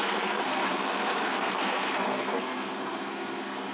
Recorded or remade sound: remade